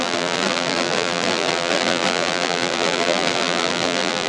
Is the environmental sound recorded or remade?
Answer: remade